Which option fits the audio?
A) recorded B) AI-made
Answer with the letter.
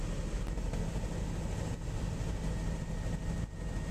A